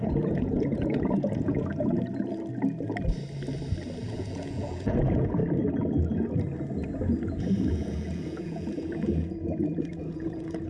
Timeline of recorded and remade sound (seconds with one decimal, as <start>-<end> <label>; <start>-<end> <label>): 0.0-1.7 remade; 1.7-4.0 recorded; 4.0-5.4 remade; 5.4-7.7 recorded; 7.7-10.7 remade